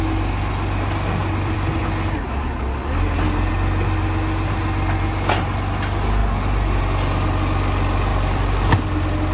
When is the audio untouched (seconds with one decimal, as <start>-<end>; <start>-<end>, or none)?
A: 0.0-1.2; 1.8-8.1; 8.9-9.3